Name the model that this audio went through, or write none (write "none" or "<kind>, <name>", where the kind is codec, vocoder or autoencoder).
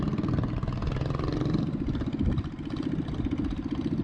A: none